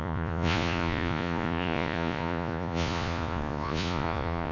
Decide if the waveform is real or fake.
fake